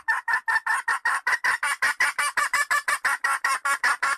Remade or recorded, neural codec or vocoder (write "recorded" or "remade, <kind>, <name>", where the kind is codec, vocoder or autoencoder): remade, vocoder, BigVGAN v2